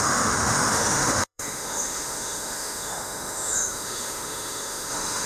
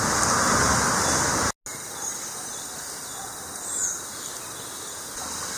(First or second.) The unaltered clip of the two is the second